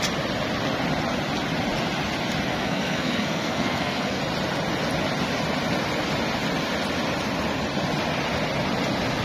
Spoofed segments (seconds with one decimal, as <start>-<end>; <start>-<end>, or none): 2.5-4.2